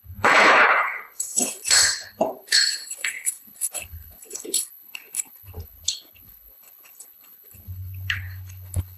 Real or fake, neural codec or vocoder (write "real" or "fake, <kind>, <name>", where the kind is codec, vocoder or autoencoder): fake, codec, HILCodec